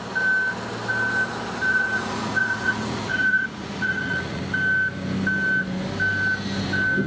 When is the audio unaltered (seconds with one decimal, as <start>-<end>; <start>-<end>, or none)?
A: 0.0-1.7; 4.4-7.1